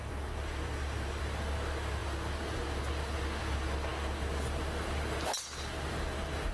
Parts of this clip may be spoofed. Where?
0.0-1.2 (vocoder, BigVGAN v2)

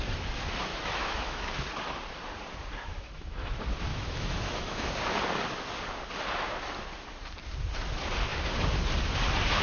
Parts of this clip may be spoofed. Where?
0.7-1.5 (autoencoder, DAC-VAE); 2.9-3.5; 3.9-4.9

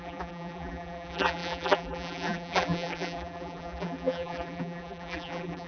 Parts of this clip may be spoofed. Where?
0.0-5.7 (vocoder, BigVGAN v2)

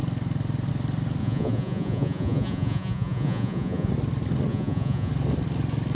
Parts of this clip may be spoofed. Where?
1.2-3.9 (vocoder, Vocos); 4.5-5.1